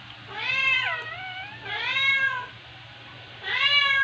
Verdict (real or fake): real